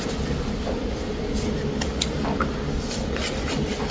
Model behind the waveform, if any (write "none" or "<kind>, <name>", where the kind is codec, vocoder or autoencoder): none